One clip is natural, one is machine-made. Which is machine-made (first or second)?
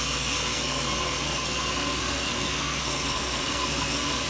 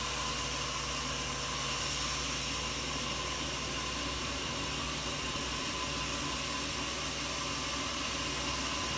first